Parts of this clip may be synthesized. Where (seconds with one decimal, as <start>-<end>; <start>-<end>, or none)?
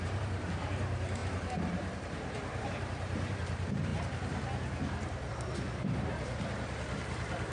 0.0-3.9; 5.3-7.5